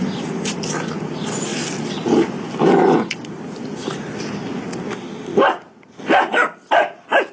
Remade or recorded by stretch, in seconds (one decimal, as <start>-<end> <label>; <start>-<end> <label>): 0.0-1.5 recorded; 1.5-2.4 remade; 2.4-7.3 recorded